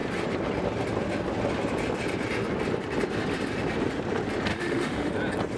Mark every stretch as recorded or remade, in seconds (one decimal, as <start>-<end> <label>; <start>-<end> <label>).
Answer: 0.0-4.5 recorded; 4.5-5.1 remade; 5.1-5.6 recorded